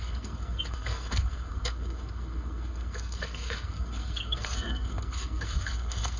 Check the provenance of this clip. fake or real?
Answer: fake